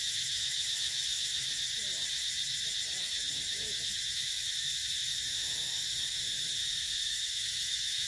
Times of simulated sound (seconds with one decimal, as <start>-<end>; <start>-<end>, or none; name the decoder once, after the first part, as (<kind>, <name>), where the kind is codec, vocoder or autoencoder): 0.0-1.5 (autoencoder, DAC-VAE); 3.0-8.1